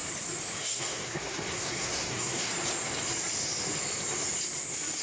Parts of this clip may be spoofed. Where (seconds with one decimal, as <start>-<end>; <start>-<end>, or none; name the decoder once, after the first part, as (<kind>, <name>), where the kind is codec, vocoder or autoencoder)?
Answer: 0.6-2.5 (codec, SNAC)